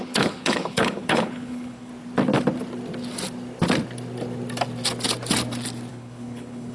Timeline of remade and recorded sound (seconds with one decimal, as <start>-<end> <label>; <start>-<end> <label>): 0.0-1.9 remade; 1.9-5.9 recorded; 5.9-6.7 remade